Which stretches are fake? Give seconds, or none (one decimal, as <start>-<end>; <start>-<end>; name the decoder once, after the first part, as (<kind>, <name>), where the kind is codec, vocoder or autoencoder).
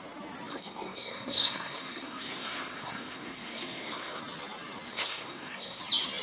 0.5-4.2 (codec, SNAC); 4.9-5.8